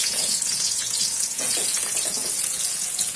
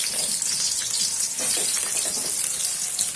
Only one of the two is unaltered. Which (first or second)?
second